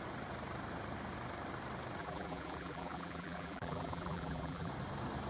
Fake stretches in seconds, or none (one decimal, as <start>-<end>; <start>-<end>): 2.0-4.7